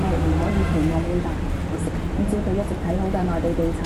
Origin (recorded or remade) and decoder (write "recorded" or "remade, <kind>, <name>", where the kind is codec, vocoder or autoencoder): recorded